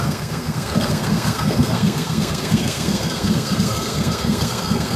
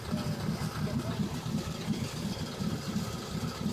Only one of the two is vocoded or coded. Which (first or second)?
first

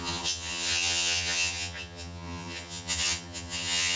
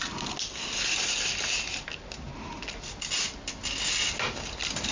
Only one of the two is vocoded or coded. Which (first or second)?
first